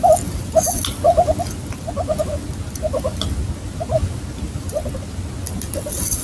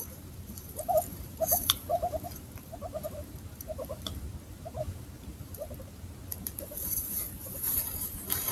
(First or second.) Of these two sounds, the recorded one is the first